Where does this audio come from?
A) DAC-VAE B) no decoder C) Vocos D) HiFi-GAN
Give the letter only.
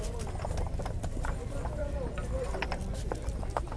B